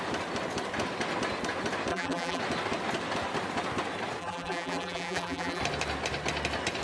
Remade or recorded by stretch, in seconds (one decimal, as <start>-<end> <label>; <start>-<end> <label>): 0.0-1.9 recorded; 1.9-2.4 remade; 2.4-4.2 recorded; 4.2-5.6 remade; 5.6-6.8 recorded